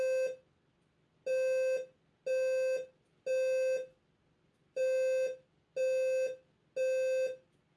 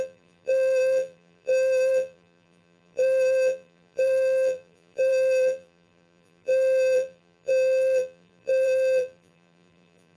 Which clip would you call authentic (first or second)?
first